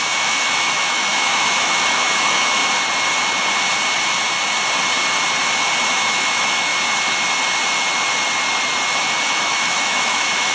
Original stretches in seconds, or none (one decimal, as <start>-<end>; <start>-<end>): 2.6-5.9; 6.7-9.2